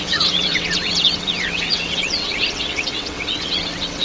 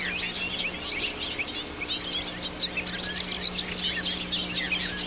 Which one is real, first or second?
second